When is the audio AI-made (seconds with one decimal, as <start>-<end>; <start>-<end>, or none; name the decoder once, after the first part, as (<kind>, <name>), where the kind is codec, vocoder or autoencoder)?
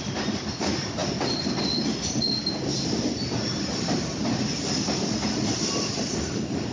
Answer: 0.0-6.7 (vocoder, BigVGAN v2)